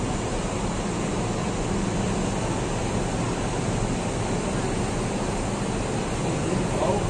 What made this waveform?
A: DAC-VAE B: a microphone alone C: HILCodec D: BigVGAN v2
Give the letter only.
B